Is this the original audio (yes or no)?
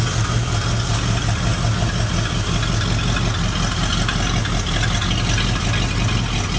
yes